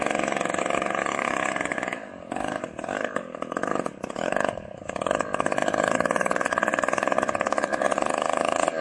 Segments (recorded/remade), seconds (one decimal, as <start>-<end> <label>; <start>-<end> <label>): 0.0-8.8 remade